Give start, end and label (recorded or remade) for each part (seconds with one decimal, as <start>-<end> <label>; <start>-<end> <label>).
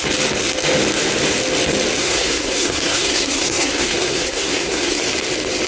0.0-2.0 recorded; 2.0-5.0 remade; 5.0-5.7 recorded